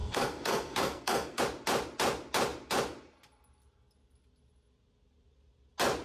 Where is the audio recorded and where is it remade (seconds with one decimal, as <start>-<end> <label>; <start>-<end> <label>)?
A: 0.0-1.4 remade; 1.4-6.0 recorded